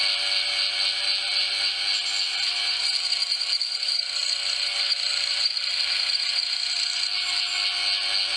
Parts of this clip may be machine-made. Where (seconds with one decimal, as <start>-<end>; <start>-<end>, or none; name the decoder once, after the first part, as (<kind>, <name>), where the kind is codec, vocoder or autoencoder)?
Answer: 2.6-4.0 (vocoder, BigVGAN v2); 5.1-5.9